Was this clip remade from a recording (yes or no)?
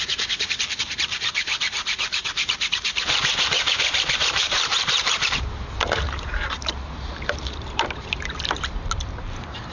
yes